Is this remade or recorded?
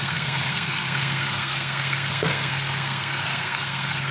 remade